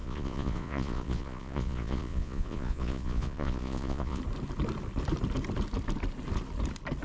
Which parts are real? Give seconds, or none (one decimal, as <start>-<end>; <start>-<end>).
4.2-7.0